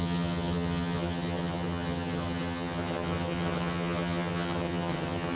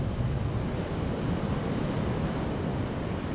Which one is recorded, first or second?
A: second